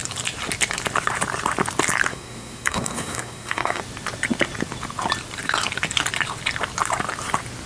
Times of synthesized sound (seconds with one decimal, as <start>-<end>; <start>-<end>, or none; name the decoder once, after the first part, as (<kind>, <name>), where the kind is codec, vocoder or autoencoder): 2.1-3.8 (codec, SNAC)